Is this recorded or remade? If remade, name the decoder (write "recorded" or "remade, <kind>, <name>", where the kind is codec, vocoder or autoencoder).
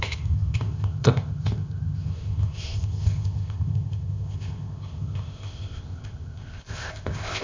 remade, codec, ZipCodec